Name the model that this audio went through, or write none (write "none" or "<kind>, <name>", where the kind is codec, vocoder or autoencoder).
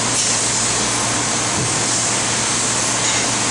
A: none